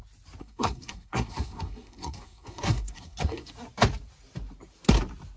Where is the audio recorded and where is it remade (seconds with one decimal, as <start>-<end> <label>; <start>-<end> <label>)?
0.0-0.4 recorded; 0.4-3.5 remade; 3.5-5.4 recorded